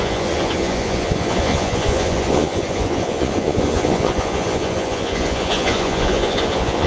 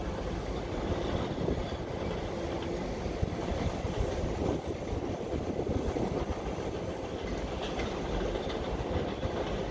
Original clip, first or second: second